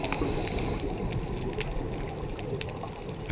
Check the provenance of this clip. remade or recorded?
recorded